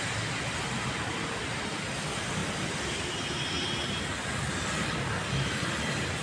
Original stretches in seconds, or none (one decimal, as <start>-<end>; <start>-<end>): 0.0-6.2